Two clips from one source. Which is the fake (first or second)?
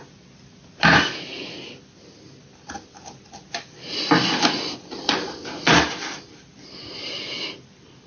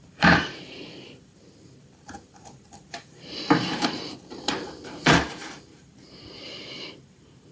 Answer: second